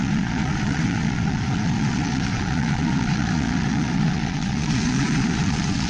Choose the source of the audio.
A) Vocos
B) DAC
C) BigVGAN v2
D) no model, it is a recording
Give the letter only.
A